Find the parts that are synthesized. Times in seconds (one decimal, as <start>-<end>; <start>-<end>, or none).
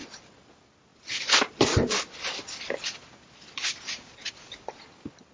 0.0-0.5; 0.9-3.0